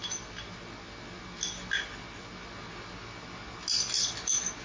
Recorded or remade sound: recorded